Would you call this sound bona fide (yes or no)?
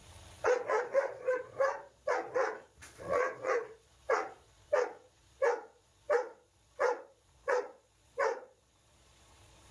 no